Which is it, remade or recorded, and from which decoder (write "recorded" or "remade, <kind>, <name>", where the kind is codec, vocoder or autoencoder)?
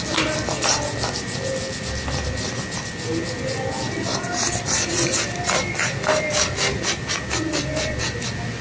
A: recorded